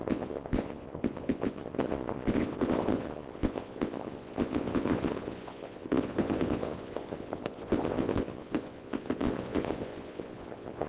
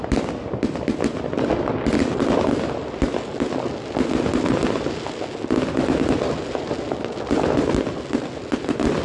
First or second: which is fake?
first